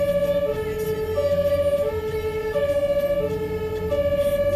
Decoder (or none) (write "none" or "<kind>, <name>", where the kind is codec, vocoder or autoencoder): none